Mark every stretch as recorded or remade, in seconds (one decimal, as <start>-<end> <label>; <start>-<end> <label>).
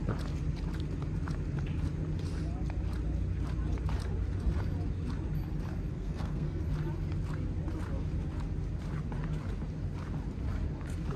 0.0-5.9 recorded; 5.9-6.6 remade; 6.6-11.2 recorded